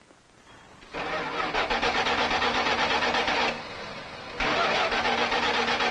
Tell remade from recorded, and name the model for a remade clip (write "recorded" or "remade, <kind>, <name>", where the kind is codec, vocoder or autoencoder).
recorded